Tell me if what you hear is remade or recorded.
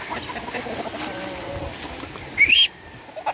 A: recorded